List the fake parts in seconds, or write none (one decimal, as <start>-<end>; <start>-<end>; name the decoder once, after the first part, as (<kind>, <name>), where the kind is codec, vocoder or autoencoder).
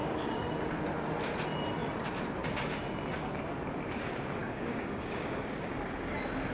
0.0-0.5 (codec, DAC); 4.4-5.7